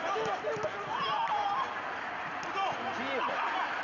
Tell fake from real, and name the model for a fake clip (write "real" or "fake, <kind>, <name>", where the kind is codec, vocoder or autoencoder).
real